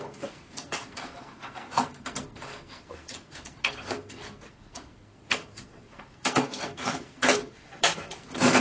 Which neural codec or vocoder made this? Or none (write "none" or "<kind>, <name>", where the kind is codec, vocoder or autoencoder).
codec, SNAC